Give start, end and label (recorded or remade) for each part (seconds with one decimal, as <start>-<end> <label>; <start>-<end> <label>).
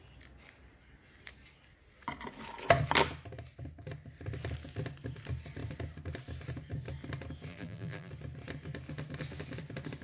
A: 0.0-7.5 recorded; 7.5-8.1 remade; 8.1-10.0 recorded